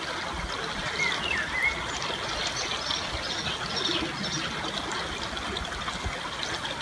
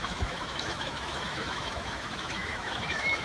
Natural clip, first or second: first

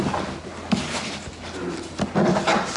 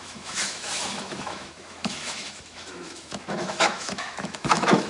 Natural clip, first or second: first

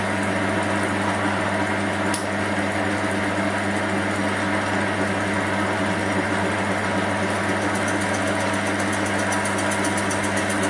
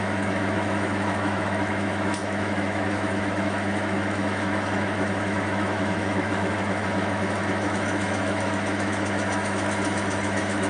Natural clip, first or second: first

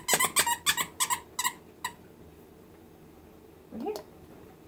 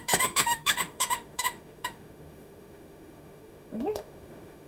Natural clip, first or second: first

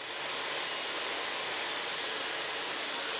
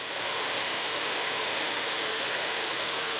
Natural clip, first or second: first